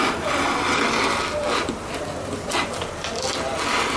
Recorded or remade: recorded